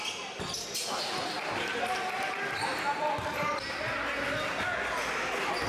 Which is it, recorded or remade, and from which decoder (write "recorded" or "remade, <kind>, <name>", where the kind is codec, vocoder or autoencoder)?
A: recorded